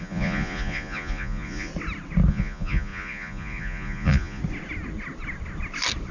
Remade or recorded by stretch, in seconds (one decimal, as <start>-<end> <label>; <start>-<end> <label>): 0.0-1.7 remade; 1.7-2.3 recorded; 2.3-4.4 remade; 4.4-6.1 recorded